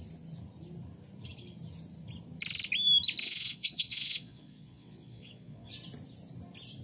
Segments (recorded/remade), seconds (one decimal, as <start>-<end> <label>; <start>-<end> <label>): 0.0-3.2 recorded; 3.2-5.7 remade; 5.7-6.8 recorded